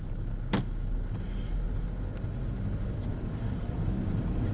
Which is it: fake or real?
real